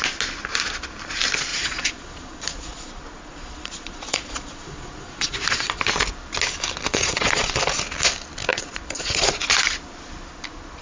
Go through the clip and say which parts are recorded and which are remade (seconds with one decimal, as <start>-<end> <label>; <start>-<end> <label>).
0.0-1.5 recorded; 1.5-5.8 remade; 5.8-6.9 recorded; 6.9-7.5 remade; 7.5-8.5 recorded; 8.5-9.4 remade; 9.4-10.8 recorded